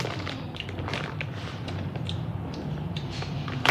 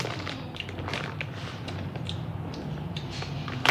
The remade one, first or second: first